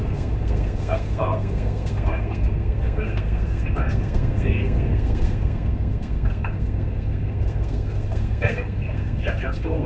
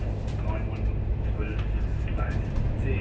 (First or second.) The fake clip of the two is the first